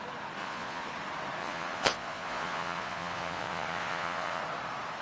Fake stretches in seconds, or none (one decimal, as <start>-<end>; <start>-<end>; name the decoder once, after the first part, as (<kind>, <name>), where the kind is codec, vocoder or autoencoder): 0.4-0.9 (vocoder, Vocos); 1.4-4.4